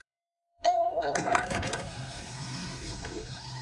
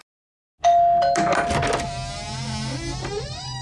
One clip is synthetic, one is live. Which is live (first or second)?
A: second